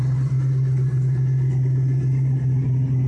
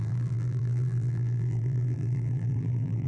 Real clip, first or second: first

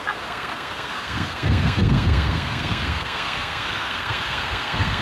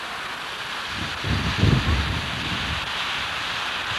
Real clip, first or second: second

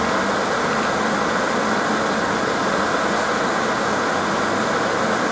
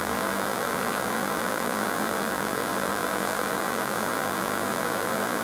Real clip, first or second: first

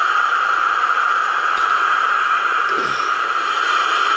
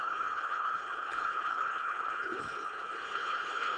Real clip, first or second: first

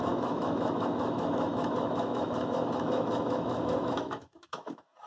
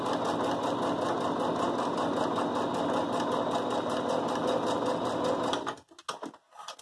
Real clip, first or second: second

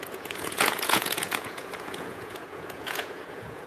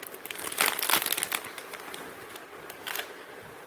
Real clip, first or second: second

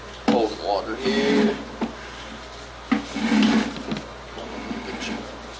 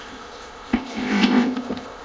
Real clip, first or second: first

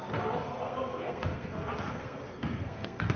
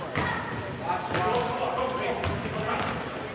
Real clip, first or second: second